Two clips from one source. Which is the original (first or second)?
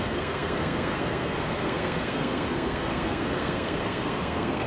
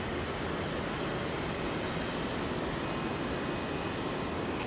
second